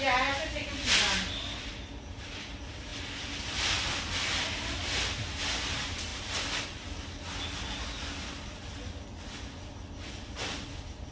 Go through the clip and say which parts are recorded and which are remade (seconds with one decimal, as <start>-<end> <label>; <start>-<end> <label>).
0.0-11.1 recorded